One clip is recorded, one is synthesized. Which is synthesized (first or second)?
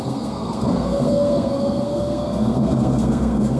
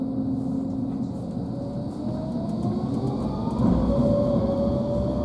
first